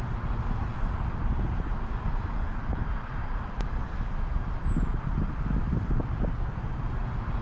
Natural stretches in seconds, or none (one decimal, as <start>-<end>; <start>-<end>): 0.0-7.4